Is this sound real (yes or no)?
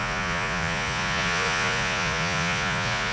no